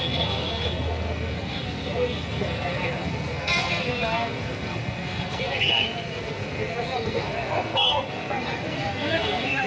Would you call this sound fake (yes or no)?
yes